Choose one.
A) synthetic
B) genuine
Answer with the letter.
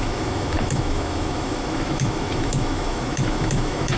A